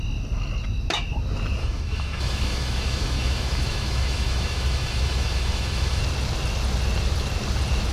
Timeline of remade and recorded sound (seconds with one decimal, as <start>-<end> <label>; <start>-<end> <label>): 0.0-1.6 recorded; 1.6-6.0 remade; 6.0-7.9 recorded